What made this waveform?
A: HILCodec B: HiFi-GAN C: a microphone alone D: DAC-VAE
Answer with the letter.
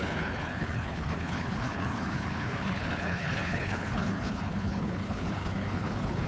A